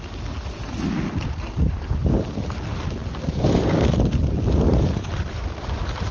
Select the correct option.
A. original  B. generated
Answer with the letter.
A